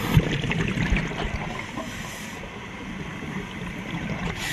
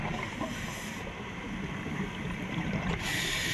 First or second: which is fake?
first